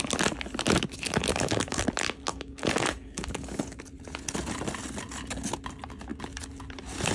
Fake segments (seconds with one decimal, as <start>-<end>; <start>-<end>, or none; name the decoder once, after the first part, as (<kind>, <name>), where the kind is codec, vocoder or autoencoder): 1.3-1.8 (codec, DAC); 2.3-3.8